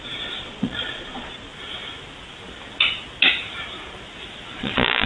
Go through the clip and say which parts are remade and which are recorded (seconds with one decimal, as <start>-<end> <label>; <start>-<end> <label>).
0.0-1.5 remade; 1.5-4.6 recorded; 4.6-5.1 remade